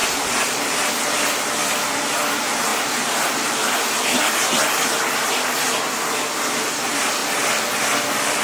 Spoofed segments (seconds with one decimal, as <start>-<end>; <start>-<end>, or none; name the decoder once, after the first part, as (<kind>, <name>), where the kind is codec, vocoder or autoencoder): 0.0-0.9 (vocoder, BigVGAN v2); 2.7-4.2; 7.2-7.8